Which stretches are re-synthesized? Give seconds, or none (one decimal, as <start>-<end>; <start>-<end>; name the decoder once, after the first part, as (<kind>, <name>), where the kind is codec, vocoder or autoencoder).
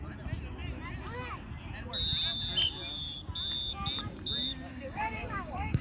4.7-5.8 (codec, DAC)